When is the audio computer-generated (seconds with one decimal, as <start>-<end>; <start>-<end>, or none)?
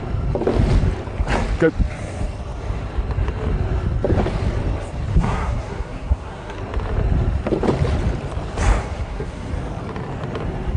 5.1-6.6; 8.8-9.5